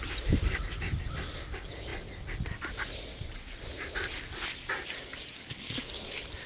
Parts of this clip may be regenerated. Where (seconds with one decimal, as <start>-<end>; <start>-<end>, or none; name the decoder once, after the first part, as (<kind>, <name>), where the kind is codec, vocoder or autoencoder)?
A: 3.1-3.6 (vocoder, WaveNeXt)